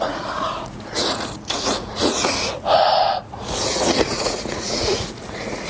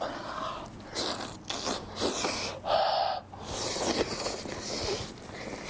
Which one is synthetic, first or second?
first